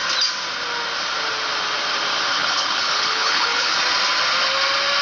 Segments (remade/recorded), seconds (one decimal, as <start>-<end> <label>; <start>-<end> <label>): 0.0-2.3 recorded; 2.3-3.8 remade; 3.8-5.0 recorded